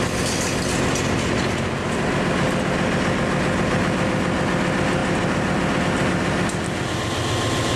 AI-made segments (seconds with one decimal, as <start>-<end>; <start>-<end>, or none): none